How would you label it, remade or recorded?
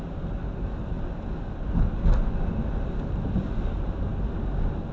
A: recorded